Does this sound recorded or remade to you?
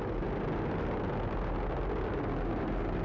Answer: recorded